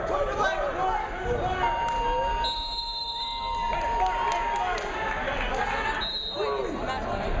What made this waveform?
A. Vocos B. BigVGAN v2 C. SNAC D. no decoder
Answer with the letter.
D